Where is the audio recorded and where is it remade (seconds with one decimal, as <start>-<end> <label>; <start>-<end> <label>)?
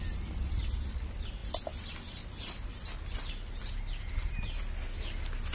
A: 0.0-5.5 recorded